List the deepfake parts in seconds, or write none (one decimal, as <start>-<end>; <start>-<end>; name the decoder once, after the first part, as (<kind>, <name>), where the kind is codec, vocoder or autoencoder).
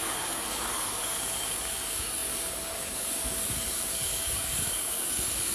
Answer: 0.0-5.5 (codec, DAC)